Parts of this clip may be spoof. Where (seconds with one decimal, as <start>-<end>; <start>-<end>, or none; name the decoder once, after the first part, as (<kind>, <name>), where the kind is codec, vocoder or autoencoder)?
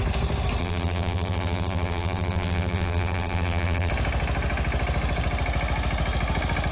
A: 0.6-3.9 (vocoder, BigVGAN v2)